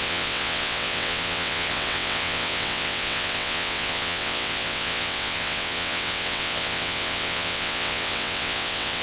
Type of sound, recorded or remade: remade